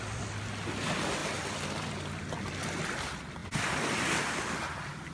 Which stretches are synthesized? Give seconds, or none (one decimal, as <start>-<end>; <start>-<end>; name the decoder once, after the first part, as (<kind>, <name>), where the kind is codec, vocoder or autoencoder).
1.2-2.2 (vocoder, BigVGAN v2); 3.4-5.1